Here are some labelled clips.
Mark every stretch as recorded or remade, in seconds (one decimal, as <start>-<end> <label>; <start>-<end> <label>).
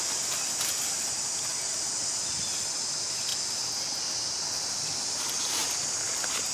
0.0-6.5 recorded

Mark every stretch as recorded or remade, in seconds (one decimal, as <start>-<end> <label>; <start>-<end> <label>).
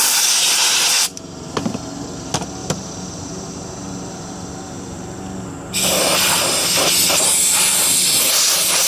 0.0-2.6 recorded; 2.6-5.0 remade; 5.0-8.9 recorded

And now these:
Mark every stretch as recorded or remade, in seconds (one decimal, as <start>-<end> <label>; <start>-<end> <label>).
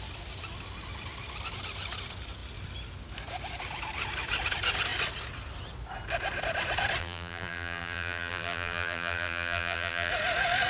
0.0-7.0 recorded; 7.0-10.1 remade; 10.1-10.7 recorded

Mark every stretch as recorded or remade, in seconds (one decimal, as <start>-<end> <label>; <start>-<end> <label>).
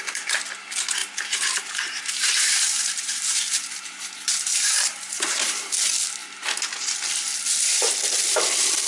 0.0-1.0 recorded; 1.0-5.8 remade; 5.8-8.9 recorded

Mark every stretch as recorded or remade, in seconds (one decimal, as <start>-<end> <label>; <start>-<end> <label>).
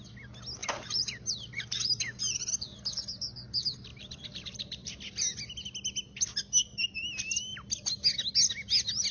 0.0-0.6 recorded; 0.6-2.5 remade; 2.5-3.9 recorded; 3.9-5.0 remade; 5.0-9.1 recorded